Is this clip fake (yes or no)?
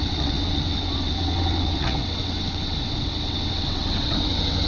yes